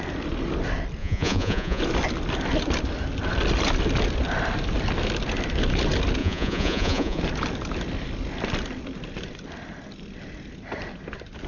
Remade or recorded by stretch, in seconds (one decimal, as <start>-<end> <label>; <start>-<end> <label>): 0.0-1.0 recorded; 1.0-1.8 remade; 1.8-6.2 recorded; 6.2-7.2 remade; 7.2-11.5 recorded